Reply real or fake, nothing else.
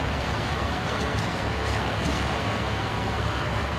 fake